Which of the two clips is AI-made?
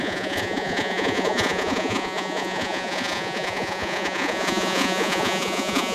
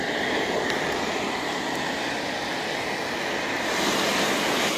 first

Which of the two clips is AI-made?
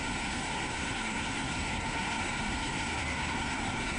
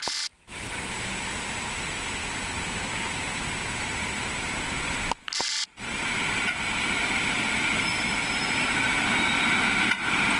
first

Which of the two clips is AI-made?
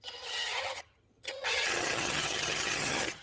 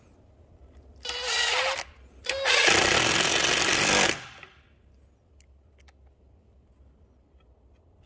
first